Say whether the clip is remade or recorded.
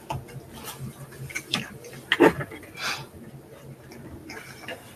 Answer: recorded